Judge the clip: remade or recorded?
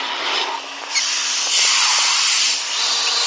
recorded